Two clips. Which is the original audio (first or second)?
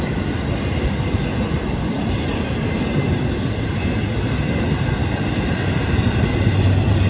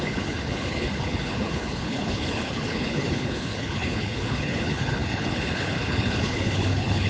first